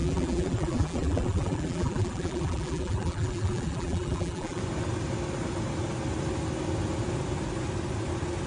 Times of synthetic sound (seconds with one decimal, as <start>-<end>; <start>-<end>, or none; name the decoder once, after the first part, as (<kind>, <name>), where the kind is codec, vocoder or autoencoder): 0.0-4.6 (vocoder, BigVGAN v2)